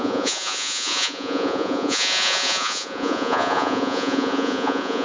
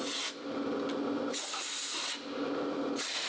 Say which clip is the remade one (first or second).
first